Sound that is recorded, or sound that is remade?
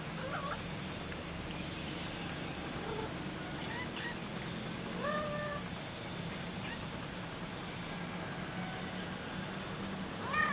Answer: recorded